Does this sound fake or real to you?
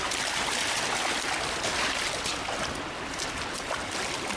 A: real